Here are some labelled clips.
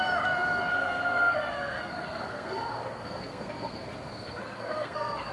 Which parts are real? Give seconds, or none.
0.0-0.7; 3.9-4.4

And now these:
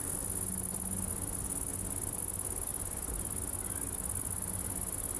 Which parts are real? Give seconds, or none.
0.0-5.2